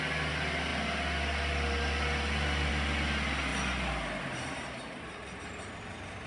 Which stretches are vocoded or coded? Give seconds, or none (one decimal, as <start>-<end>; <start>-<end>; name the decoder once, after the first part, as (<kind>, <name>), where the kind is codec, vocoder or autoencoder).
none